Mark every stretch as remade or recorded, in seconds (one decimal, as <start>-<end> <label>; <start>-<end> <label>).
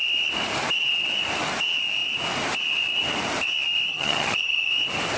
0.0-3.9 recorded; 3.9-4.7 remade; 4.7-5.2 recorded